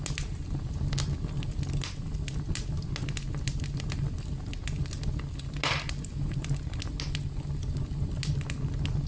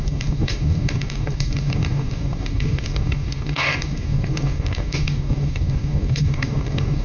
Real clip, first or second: first